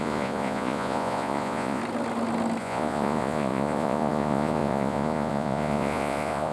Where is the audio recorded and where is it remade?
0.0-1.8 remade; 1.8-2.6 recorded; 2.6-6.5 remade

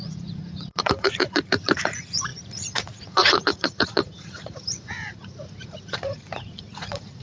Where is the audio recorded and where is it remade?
0.0-7.2 remade